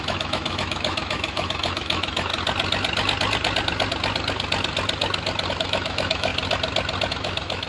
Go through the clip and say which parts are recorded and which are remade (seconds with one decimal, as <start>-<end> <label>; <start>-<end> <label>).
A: 0.0-2.3 remade; 2.3-5.5 recorded; 5.5-6.3 remade; 6.3-7.1 recorded; 7.1-7.7 remade